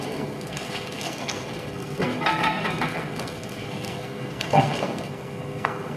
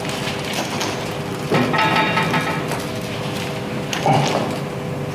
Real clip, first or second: second